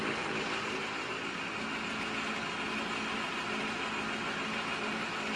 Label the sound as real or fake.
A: real